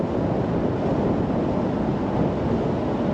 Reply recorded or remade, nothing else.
recorded